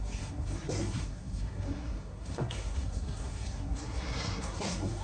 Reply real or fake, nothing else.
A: fake